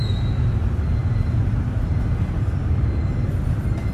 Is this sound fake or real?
real